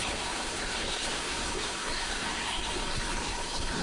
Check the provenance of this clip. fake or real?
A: fake